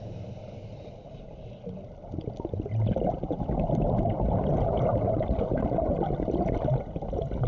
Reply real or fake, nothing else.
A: real